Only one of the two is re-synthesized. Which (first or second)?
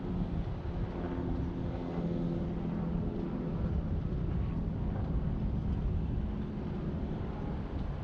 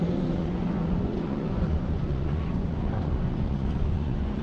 second